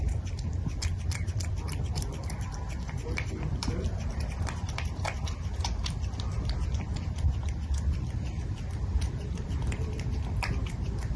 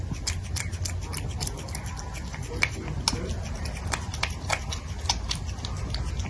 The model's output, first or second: first